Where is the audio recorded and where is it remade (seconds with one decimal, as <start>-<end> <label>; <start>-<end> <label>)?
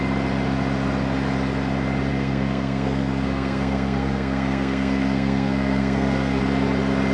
0.0-2.1 recorded; 2.1-6.4 remade; 6.4-7.1 recorded